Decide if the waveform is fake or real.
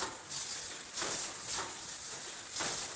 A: real